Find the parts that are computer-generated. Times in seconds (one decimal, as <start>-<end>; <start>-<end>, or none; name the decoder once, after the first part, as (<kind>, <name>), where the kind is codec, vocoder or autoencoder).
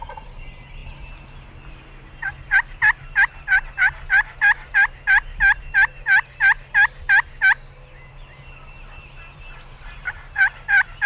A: none